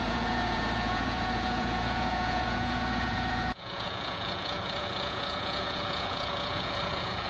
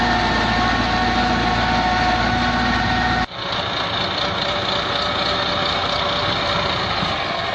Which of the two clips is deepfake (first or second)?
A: first